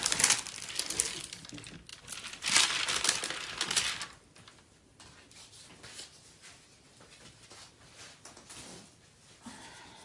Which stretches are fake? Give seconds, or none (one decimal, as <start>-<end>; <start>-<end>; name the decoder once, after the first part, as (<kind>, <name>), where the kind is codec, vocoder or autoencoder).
1.9-2.6 (vocoder, BigVGAN v2)